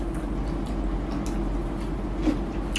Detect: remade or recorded recorded